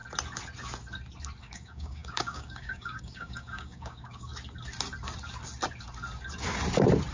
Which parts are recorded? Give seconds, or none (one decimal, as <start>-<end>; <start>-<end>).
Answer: 0.0-1.4; 4.3-7.1